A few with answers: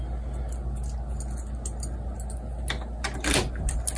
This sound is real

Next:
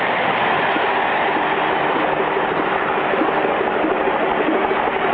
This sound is real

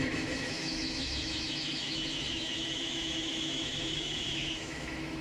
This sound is fake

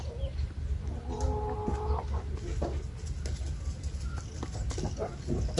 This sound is real